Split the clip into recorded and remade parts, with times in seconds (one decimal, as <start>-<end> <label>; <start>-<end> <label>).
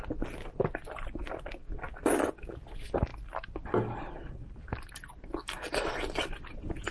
0.0-6.9 recorded